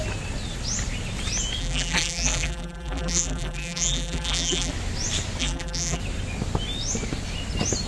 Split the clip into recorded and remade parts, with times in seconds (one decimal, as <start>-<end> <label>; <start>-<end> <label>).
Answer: 0.0-1.6 recorded; 1.6-4.7 remade; 4.7-5.4 recorded; 5.4-6.0 remade; 6.0-7.9 recorded